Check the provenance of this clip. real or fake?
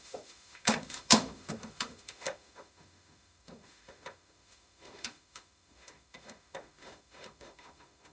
fake